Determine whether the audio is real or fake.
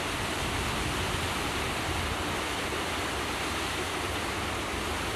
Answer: real